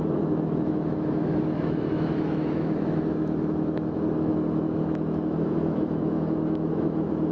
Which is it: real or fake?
fake